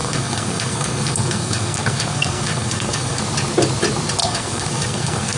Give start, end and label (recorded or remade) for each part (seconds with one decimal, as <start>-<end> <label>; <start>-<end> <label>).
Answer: 0.0-3.2 remade; 3.2-4.2 recorded; 4.2-5.4 remade